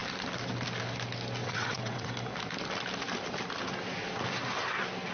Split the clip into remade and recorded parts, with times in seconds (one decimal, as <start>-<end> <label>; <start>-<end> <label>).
0.0-1.4 recorded; 1.4-2.1 remade; 2.1-5.1 recorded